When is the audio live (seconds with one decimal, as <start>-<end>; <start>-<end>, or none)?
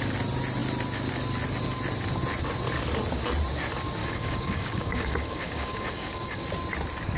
0.0-4.0; 6.5-7.2